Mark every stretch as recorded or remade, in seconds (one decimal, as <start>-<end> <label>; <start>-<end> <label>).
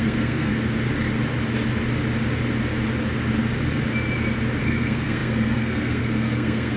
0.0-0.5 remade; 0.5-4.6 recorded; 4.6-6.8 remade